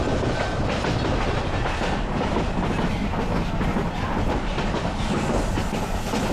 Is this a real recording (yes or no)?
yes